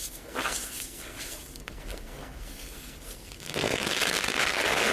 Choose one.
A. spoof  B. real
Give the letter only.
A